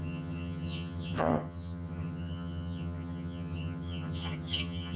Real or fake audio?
fake